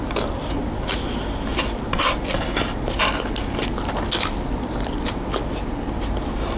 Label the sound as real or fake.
real